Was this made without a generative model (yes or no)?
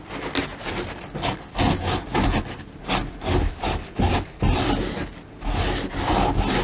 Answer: yes